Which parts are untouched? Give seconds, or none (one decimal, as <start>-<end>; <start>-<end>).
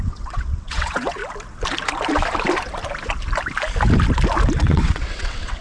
1.2-4.6